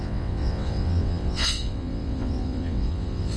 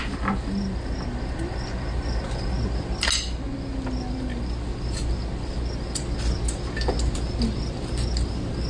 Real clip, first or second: second